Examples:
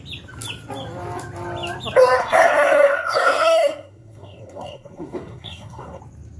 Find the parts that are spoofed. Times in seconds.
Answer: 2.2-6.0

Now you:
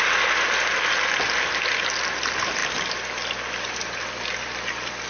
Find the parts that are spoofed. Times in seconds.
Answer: none

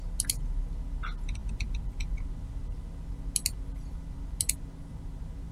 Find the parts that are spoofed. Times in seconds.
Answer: none

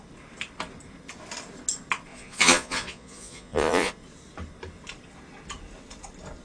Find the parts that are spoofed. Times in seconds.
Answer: 2.1-3.9

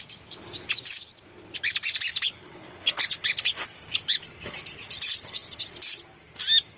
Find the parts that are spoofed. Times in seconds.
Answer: 2.1-3.5

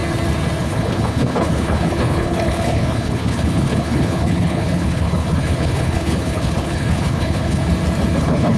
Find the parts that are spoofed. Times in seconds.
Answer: 0.6-7.6; 8.2-8.6